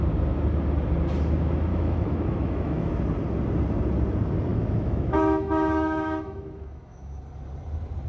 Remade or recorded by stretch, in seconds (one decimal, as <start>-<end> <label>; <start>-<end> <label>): 0.0-1.7 recorded; 1.7-2.9 remade; 2.9-4.5 recorded; 4.5-7.2 remade; 7.2-8.1 recorded